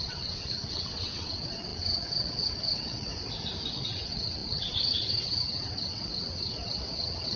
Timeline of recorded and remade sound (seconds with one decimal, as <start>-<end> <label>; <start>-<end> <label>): 0.0-3.1 remade; 3.1-3.7 recorded; 3.7-7.4 remade